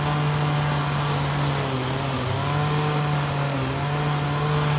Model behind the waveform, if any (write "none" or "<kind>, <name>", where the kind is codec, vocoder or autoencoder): none